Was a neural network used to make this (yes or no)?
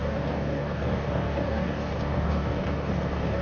yes